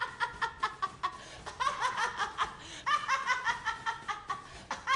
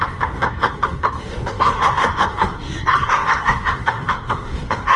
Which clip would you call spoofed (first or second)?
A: second